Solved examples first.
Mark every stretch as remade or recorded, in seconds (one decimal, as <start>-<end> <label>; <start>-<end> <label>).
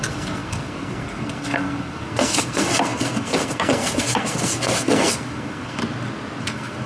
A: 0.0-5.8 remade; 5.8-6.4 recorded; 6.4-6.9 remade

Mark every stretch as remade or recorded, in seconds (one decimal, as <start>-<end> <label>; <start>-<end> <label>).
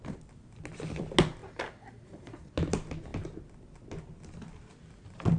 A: 0.0-1.4 recorded; 1.4-2.5 remade; 2.5-5.4 recorded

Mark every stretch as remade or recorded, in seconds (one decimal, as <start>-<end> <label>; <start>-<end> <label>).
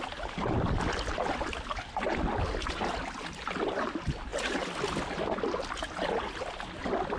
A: 0.0-7.2 recorded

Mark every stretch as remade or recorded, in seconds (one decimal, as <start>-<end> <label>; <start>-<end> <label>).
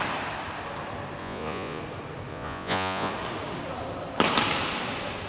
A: 0.0-1.2 recorded; 1.2-1.8 remade; 1.8-2.3 recorded; 2.3-3.1 remade; 3.1-5.3 recorded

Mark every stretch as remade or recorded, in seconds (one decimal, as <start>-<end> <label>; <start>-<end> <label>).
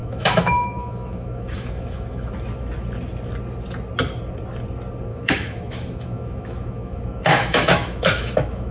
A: 0.0-2.3 remade; 2.3-5.1 recorded; 5.1-8.7 remade